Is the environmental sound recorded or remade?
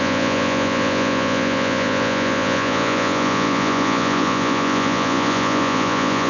remade